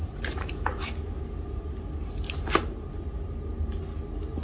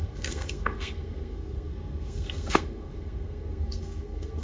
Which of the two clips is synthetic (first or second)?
second